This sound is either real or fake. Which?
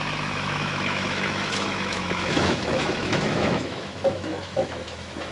fake